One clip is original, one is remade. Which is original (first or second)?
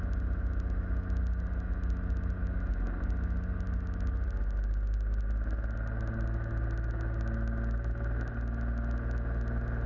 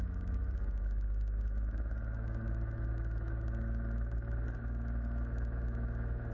first